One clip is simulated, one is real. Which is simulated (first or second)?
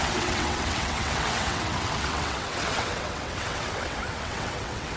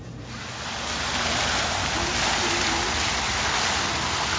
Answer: first